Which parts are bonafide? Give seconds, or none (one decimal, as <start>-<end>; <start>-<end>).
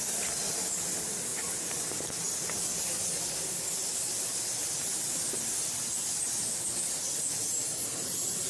0.0-8.5